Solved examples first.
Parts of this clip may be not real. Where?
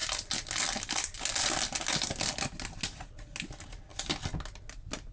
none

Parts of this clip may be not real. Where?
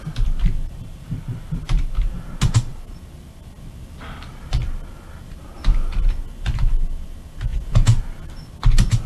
7.5-8.0 (vocoder, Vocos)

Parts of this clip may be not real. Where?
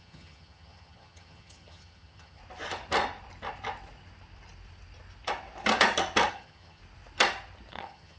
0.0-2.4 (vocoder, HiFi-GAN); 6.3-6.8; 7.7-8.2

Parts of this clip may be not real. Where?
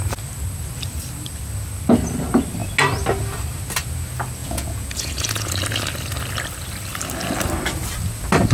4.4-5.5 (vocoder, Vocos)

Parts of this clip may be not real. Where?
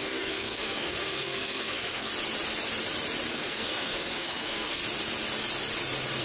0.0-2.1 (codec, SNAC); 3.3-4.8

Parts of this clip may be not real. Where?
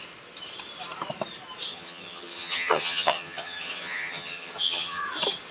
1.7-5.0 (vocoder, HiFi-GAN)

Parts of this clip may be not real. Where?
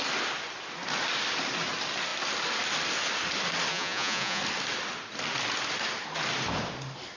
3.7-4.4 (vocoder, Vocos)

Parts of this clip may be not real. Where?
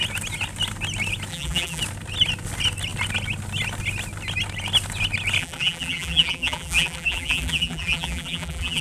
1.3-1.8 (vocoder, BigVGAN v2); 5.4-8.8